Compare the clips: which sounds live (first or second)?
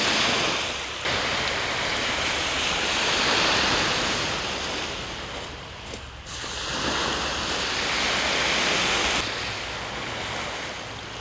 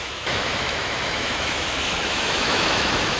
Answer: first